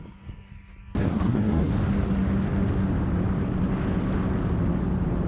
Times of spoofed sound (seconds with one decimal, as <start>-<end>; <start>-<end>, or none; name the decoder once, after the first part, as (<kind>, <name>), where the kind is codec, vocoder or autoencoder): 1.0-1.7 (codec, SNAC)